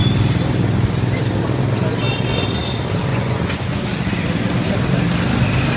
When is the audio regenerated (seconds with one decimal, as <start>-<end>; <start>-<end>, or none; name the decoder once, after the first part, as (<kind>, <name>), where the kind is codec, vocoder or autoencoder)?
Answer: 3.1-3.8 (vocoder, Vocos)